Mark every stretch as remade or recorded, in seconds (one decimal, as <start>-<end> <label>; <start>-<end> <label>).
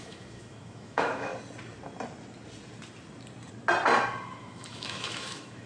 0.0-1.3 remade; 1.3-4.4 recorded; 4.4-5.7 remade